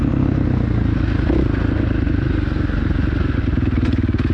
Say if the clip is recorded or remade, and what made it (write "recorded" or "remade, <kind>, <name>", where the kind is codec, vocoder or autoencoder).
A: recorded